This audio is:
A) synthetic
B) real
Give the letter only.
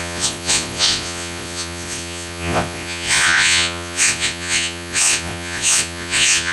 A